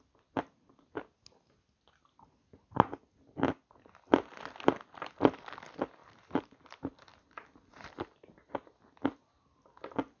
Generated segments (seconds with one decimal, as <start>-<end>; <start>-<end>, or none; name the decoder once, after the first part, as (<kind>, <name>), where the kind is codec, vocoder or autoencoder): 6.0-6.6 (vocoder, BigVGAN v2)